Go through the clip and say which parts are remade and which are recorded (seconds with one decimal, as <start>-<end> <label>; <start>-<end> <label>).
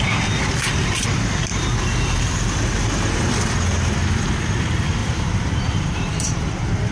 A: 0.0-1.5 recorded; 1.5-3.3 remade; 3.3-5.0 recorded; 5.0-6.5 remade; 6.5-6.9 recorded